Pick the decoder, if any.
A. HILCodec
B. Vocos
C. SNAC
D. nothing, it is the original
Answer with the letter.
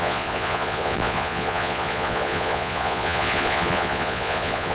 B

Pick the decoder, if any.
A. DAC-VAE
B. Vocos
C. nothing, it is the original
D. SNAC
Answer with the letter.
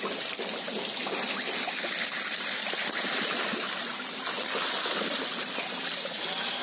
C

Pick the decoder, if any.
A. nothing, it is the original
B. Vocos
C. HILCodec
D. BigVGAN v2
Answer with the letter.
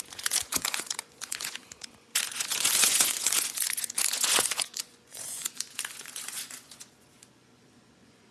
B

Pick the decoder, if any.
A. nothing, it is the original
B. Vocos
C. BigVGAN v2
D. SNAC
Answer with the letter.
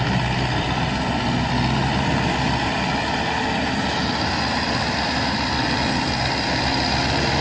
A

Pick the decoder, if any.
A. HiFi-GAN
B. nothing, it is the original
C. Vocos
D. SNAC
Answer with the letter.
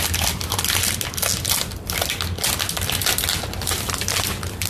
B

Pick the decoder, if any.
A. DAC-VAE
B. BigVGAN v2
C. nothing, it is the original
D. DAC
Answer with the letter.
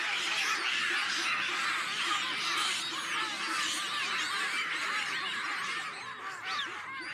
C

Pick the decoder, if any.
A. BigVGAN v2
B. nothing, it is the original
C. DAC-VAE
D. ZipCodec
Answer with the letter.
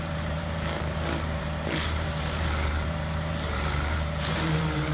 A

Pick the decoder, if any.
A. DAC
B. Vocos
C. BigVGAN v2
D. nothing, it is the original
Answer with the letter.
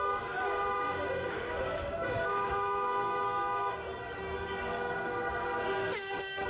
A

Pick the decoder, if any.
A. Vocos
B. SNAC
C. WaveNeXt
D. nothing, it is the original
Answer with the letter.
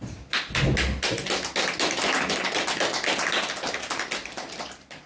D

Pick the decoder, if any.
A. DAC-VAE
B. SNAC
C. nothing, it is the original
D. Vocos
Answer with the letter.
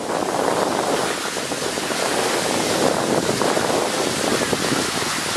C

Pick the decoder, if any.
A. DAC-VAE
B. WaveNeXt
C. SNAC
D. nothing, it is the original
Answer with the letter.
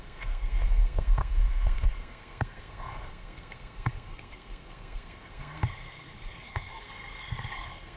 C